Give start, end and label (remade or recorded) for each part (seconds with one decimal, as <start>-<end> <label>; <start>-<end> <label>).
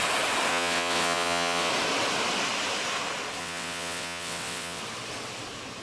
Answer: 0.0-0.5 recorded; 0.5-1.7 remade; 1.7-3.4 recorded; 3.4-4.8 remade; 4.8-5.8 recorded